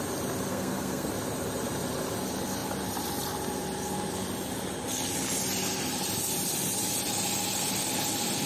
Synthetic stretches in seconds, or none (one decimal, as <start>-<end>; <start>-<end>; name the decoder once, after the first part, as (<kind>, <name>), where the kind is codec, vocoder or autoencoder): 0.5-1.1 (codec, SNAC)